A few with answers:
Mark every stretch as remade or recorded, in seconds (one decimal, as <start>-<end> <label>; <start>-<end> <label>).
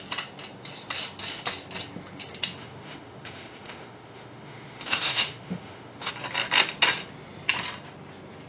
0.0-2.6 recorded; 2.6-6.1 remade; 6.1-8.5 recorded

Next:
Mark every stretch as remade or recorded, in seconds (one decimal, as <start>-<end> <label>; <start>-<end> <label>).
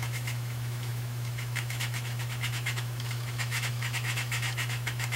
0.0-5.2 remade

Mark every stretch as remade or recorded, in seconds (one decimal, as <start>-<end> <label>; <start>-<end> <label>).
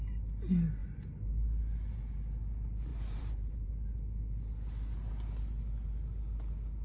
0.0-2.9 recorded; 2.9-3.7 remade; 3.7-6.8 recorded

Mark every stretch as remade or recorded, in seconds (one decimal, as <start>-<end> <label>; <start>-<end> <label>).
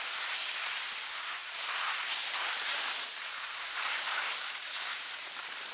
0.0-5.7 recorded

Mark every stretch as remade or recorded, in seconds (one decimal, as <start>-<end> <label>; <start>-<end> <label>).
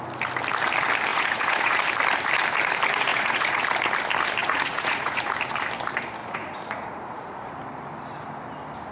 0.0-1.1 recorded; 1.1-1.8 remade; 1.8-3.1 recorded; 3.1-3.6 remade; 3.6-4.4 recorded; 4.4-5.3 remade; 5.3-6.2 recorded; 6.2-7.5 remade; 7.5-8.9 recorded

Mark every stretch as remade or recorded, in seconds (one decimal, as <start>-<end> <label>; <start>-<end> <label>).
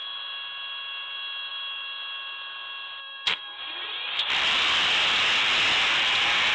0.0-3.0 recorded; 3.0-3.6 remade; 3.6-6.5 recorded